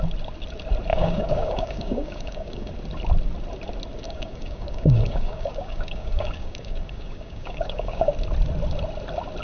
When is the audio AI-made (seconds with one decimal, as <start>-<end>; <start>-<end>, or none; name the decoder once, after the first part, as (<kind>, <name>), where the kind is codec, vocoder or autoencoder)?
0.9-2.7 (codec, DAC); 4.0-8.1